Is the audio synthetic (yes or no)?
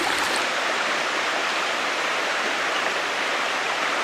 yes